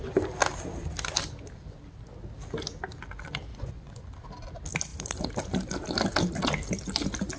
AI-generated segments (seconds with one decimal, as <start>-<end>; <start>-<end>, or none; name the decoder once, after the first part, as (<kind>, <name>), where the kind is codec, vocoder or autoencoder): 3.5-4.1 (vocoder, Vocos)